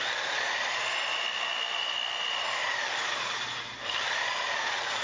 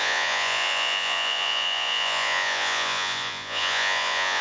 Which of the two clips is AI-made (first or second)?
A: second